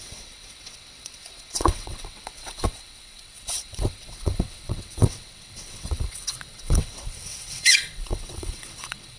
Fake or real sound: fake